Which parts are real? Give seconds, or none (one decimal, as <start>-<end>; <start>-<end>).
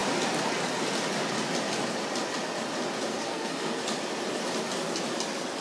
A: 0.0-3.1; 3.8-5.6